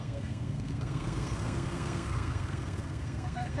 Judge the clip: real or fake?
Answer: fake